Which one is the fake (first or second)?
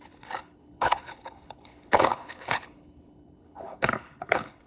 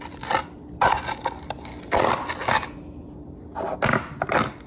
first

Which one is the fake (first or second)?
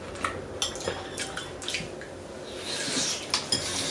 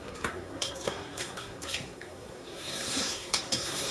second